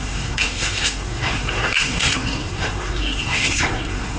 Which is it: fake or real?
fake